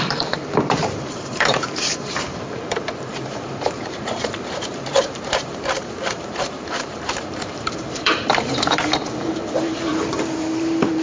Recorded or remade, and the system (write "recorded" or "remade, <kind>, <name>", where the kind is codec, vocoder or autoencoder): remade, vocoder, BigVGAN v2